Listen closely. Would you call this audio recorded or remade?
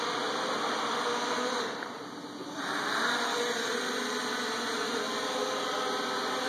recorded